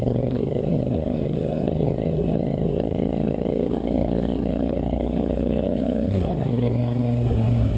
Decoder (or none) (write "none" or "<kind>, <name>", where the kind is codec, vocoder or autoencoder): codec, SNAC